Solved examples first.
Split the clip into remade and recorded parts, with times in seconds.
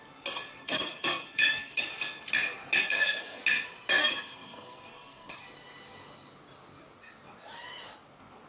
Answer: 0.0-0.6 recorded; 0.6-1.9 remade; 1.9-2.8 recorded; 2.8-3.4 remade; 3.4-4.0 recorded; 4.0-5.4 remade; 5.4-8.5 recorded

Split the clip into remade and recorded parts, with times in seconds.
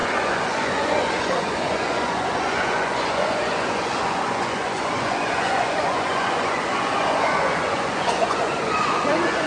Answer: 0.0-9.5 remade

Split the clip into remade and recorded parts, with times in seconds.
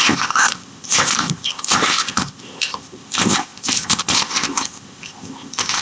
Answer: 0.0-5.8 remade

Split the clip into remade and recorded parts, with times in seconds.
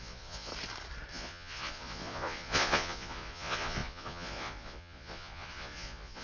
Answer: 0.0-0.5 remade; 0.5-1.1 recorded; 1.1-6.2 remade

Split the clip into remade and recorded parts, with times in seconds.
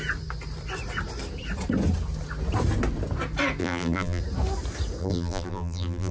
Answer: 0.0-3.6 recorded; 3.6-4.2 remade; 4.2-5.0 recorded; 5.0-6.1 remade